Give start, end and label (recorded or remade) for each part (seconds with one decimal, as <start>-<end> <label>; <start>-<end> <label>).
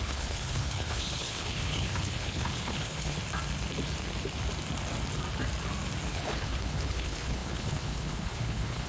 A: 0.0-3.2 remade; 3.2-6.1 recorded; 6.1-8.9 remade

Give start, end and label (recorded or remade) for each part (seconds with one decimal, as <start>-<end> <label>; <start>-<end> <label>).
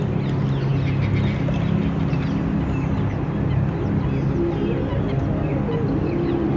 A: 0.0-6.6 recorded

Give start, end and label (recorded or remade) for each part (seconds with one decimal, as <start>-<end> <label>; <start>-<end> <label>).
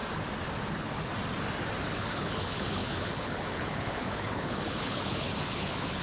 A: 0.0-0.7 recorded; 0.7-1.1 remade; 1.1-1.9 recorded; 1.9-6.0 remade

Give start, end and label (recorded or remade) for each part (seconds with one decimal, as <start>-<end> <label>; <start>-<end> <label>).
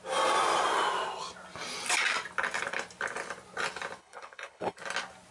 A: 0.0-4.0 recorded; 4.0-4.8 remade; 4.8-5.3 recorded